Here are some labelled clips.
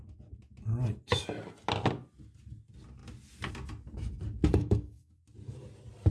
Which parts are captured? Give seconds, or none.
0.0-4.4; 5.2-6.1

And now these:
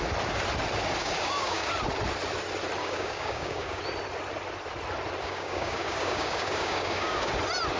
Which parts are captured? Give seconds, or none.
0.0-1.0; 1.7-2.8; 3.8-5.2; 7.3-7.8